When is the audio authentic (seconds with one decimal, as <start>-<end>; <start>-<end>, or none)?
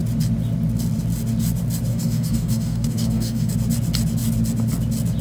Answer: 0.0-1.9; 3.5-5.2